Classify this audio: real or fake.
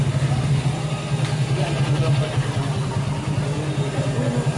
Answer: real